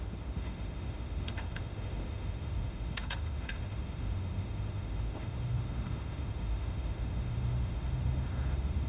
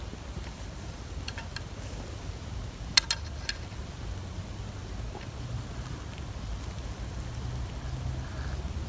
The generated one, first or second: first